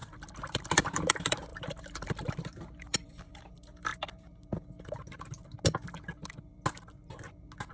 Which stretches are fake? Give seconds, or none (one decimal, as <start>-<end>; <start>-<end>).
0.0-0.6; 1.5-3.4